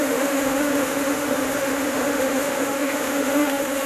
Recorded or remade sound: remade